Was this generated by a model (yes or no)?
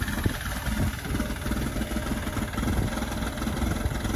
no